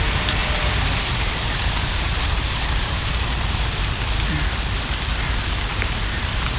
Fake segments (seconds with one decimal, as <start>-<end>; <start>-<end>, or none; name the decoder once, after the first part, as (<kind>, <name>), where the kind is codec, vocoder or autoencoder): 0.4-3.8 (vocoder, BigVGAN v2); 5.7-6.6